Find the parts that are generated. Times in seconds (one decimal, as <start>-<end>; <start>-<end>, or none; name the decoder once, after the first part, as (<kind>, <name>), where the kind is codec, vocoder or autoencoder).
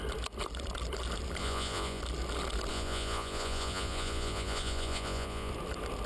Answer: 1.4-2.0 (vocoder, Vocos); 2.7-5.5